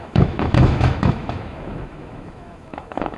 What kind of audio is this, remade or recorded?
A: remade